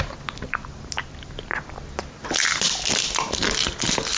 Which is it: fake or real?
real